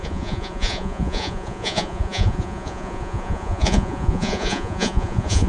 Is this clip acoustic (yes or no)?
no